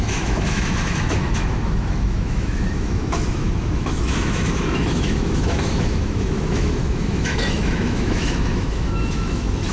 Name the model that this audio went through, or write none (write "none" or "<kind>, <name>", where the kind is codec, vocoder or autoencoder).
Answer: autoencoder, DAC-VAE